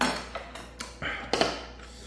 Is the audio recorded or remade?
recorded